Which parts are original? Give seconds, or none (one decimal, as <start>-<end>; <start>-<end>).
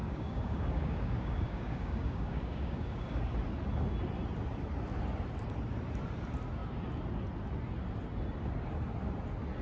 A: 3.3-9.6